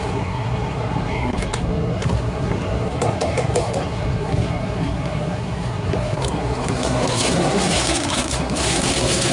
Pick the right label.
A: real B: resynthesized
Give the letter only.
B